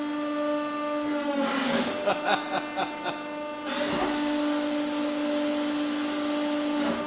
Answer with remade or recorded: recorded